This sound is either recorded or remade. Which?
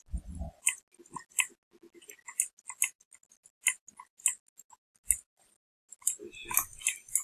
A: recorded